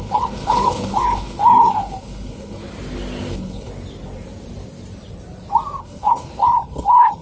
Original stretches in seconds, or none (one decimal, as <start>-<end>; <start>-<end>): 2.6-3.3; 3.7-5.8